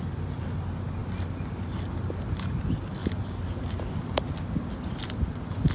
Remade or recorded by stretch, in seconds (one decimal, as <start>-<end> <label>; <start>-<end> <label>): 0.0-5.7 recorded